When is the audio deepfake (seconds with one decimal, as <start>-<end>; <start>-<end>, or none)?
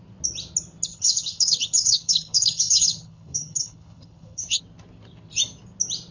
0.9-4.6